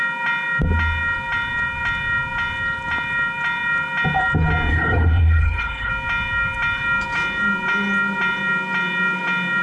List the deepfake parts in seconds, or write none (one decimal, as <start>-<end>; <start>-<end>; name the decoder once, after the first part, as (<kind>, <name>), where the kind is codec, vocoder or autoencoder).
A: 4.7-5.9 (codec, HILCodec)